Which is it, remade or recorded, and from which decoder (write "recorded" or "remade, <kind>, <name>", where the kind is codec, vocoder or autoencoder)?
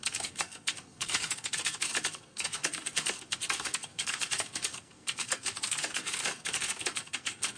remade, codec, SNAC